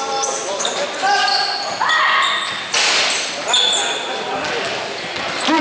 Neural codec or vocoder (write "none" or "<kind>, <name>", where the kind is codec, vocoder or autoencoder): none